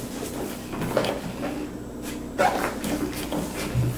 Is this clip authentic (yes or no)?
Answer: yes